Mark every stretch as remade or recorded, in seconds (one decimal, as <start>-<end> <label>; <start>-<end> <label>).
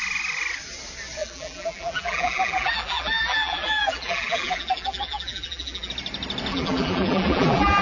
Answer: 0.0-1.2 recorded; 1.2-5.9 remade; 5.9-6.5 recorded; 6.5-7.8 remade